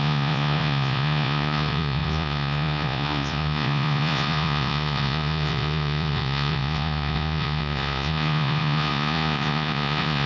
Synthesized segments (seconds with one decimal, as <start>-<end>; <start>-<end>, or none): 0.0-10.3